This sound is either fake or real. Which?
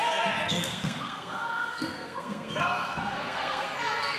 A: fake